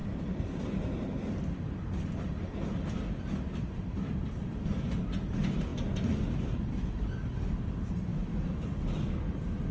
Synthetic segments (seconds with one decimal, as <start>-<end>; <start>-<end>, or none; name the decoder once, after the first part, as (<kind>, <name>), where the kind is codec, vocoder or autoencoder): 0.0-0.6 (vocoder, BigVGAN v2)